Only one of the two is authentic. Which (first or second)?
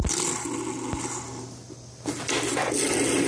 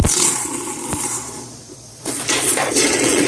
first